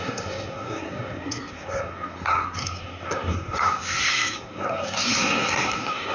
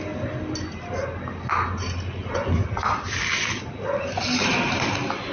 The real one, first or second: second